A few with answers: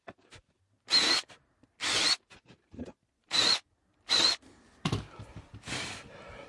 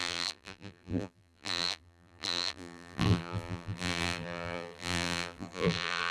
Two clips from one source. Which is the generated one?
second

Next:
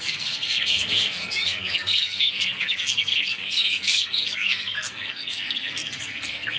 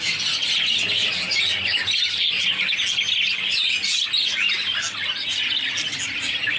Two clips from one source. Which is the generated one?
first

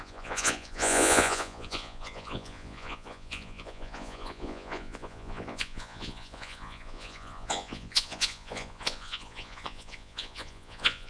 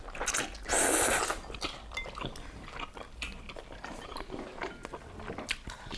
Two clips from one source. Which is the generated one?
first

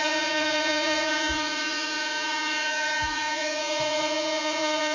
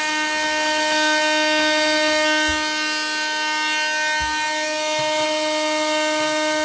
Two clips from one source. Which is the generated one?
first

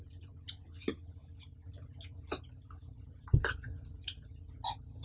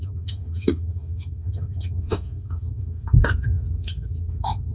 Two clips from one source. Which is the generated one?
second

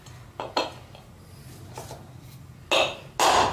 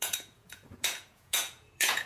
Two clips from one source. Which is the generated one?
second